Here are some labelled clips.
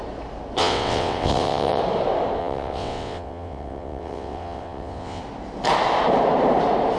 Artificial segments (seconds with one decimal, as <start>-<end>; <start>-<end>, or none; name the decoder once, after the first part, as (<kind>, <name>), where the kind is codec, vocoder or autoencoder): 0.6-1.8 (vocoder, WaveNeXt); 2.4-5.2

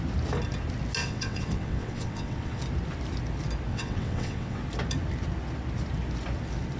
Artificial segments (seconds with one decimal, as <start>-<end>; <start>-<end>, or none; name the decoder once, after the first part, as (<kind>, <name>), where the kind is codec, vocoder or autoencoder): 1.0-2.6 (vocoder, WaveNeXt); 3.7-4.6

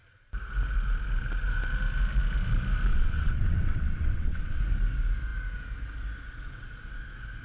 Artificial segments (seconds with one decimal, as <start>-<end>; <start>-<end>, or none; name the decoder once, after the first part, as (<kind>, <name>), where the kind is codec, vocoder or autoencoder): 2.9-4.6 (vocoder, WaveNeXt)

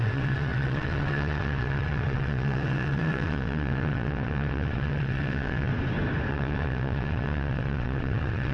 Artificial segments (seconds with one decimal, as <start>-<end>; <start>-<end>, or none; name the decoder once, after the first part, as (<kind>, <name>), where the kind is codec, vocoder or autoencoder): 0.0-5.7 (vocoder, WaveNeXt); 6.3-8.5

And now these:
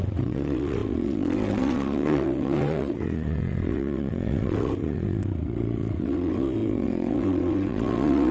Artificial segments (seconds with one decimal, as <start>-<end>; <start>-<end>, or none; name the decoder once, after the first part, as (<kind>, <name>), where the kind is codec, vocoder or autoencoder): 0.0-8.3 (vocoder, WaveNeXt)

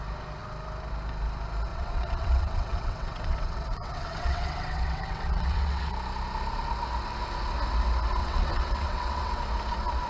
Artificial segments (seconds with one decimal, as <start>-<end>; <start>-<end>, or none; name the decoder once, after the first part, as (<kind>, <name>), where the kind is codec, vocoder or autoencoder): 1.7-5.9 (vocoder, WaveNeXt); 8.2-9.4

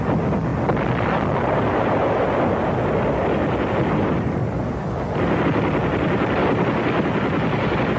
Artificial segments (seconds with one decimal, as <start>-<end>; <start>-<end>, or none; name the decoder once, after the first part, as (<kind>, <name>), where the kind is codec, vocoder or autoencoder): none